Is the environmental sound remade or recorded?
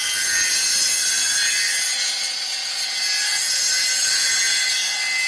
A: recorded